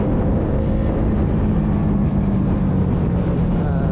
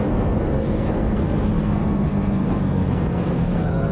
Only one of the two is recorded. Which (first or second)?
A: first